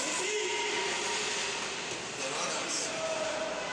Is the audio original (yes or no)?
yes